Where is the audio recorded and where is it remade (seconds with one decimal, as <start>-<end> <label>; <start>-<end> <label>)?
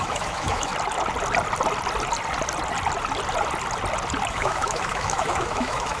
0.0-0.7 remade; 0.7-4.3 recorded; 4.3-6.0 remade